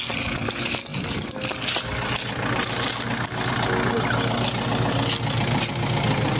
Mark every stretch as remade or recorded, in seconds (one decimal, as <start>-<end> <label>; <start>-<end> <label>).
0.0-6.4 recorded